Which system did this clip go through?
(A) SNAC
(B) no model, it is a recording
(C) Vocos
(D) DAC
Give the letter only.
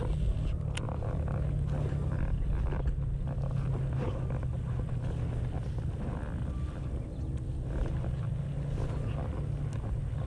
B